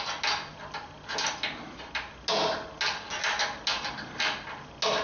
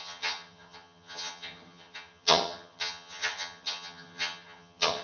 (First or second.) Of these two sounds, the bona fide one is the first